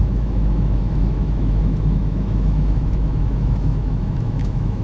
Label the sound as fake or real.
fake